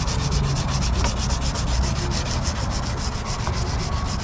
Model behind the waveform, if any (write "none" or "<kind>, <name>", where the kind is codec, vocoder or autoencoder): none